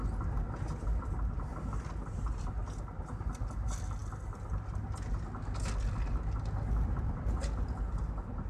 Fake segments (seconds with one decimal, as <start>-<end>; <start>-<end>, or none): none

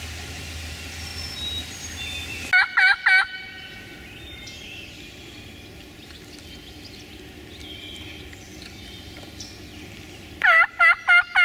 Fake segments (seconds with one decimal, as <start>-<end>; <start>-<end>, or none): none

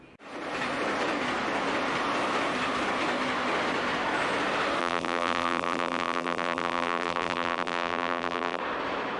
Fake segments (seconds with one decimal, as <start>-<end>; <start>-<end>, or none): 4.8-8.6

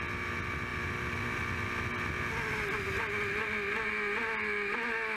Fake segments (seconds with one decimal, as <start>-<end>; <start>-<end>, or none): none

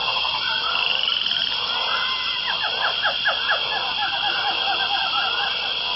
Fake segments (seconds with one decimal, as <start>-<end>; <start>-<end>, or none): 0.9-6.0

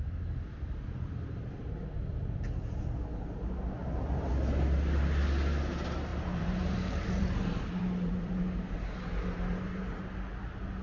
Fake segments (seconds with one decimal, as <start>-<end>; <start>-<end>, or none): 3.8-4.3; 6.1-10.0

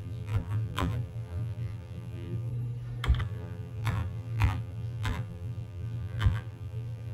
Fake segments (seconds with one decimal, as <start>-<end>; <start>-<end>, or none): 0.0-2.5; 3.2-7.1

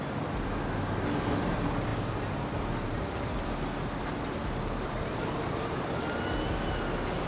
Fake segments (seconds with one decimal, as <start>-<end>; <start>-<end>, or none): 4.4-5.8